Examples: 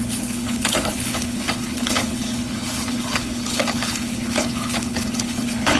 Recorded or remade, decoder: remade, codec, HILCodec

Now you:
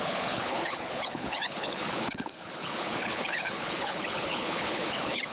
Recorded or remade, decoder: remade, codec, HILCodec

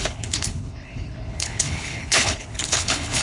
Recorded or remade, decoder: remade, codec, HILCodec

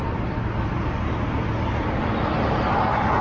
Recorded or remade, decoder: recorded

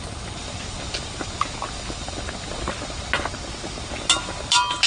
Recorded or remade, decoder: recorded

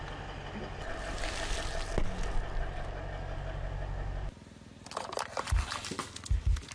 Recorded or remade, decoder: recorded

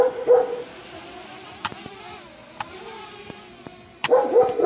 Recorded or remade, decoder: recorded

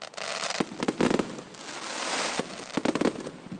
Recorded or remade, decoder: recorded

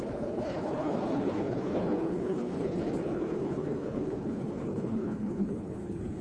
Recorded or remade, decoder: remade, codec, HILCodec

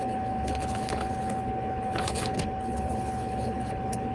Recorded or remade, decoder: remade, codec, HILCodec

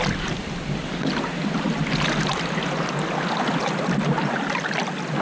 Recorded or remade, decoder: recorded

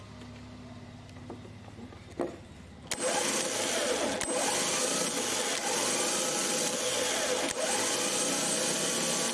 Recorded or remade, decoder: recorded